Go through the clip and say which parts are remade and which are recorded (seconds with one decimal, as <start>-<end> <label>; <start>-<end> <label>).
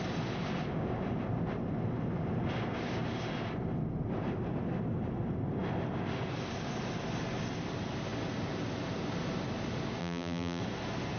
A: 0.0-10.0 recorded; 10.0-10.6 remade; 10.6-11.2 recorded